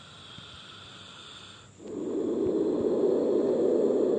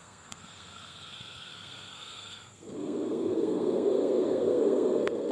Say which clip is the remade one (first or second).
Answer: second